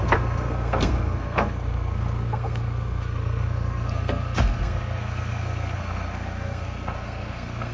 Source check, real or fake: fake